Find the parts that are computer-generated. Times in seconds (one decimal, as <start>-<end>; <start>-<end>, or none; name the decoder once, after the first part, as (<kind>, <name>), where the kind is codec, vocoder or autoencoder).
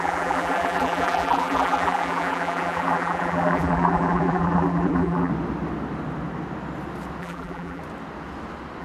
0.0-5.3 (vocoder, BigVGAN v2); 7.2-7.8